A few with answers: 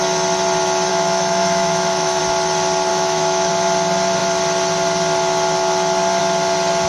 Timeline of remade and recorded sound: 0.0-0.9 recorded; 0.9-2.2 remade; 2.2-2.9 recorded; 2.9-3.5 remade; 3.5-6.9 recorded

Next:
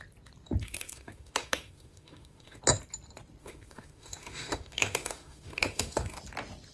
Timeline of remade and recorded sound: 0.0-0.6 recorded; 0.6-2.6 remade; 2.6-3.4 recorded; 3.4-6.2 remade; 6.2-6.7 recorded

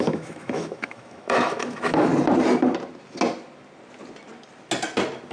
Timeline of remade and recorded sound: 0.0-2.1 remade; 2.1-5.3 recorded

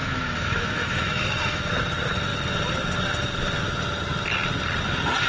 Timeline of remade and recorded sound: 0.0-1.7 remade; 1.7-5.3 recorded

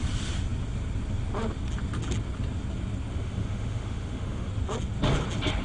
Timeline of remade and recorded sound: 0.0-3.1 recorded; 3.1-4.5 remade; 4.5-5.6 recorded

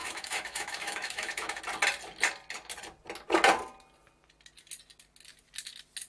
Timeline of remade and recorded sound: 0.0-1.6 remade; 1.6-6.1 recorded